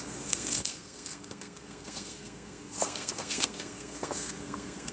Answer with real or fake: fake